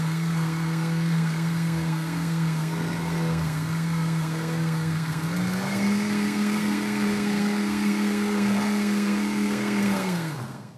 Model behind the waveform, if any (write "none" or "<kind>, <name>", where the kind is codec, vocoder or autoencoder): codec, SNAC